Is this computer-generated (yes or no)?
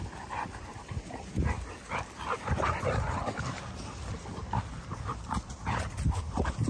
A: no